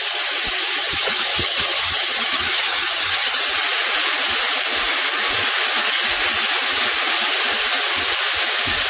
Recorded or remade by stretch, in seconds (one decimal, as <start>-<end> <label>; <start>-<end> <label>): 0.0-0.8 recorded; 0.8-3.4 remade; 3.4-8.9 recorded